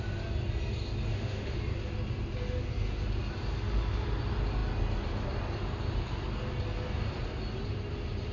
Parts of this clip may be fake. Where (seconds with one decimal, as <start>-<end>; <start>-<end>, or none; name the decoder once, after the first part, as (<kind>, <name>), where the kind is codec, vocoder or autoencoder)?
1.1-1.6 (autoencoder, DAC-VAE)